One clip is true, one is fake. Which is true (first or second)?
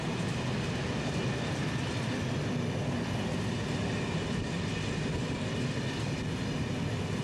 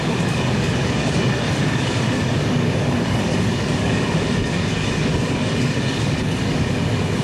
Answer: first